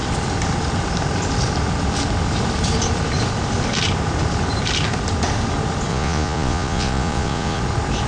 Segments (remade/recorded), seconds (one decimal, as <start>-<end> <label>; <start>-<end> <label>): 0.0-5.9 recorded; 5.9-7.6 remade; 7.6-8.1 recorded